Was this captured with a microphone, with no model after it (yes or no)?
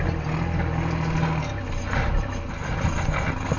yes